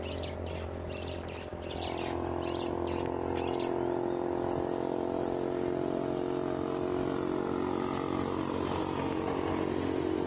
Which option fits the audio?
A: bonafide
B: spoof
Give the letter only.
A